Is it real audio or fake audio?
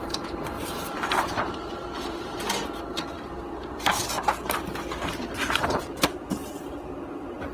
fake